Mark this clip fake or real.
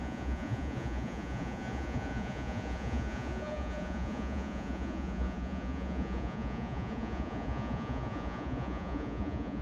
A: fake